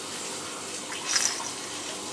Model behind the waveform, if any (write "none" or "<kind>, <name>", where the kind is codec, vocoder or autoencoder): none